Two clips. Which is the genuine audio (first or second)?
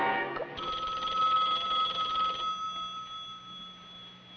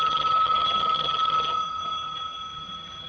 first